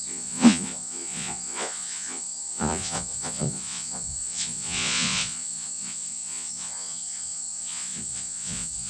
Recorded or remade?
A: remade